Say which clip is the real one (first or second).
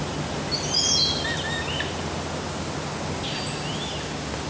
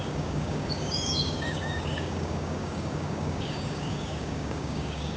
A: first